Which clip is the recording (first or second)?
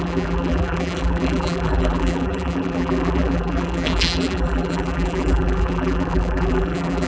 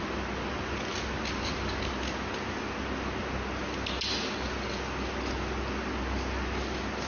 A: second